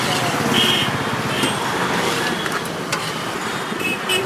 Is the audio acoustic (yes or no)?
no